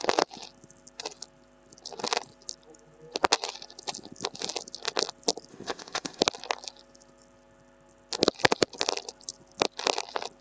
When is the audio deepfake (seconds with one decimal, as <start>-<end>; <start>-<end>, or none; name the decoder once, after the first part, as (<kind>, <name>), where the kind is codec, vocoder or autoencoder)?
5.5-6.2 (codec, ZipCodec)